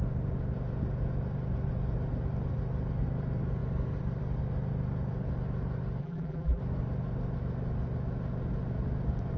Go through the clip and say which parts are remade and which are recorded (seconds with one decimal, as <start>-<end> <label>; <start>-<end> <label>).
0.0-6.0 recorded; 6.0-6.6 remade; 6.6-9.4 recorded